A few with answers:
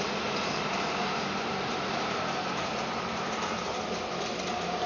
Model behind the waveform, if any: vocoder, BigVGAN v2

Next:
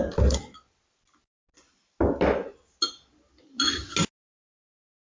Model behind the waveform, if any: none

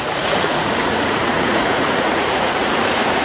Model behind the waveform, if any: vocoder, Vocos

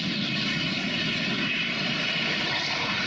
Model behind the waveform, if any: none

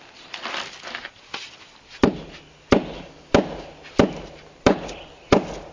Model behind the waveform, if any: none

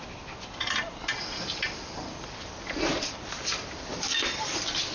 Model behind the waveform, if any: none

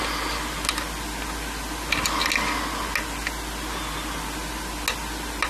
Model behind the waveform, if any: none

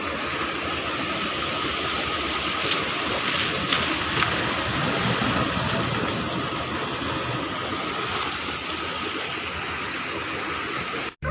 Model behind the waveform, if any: none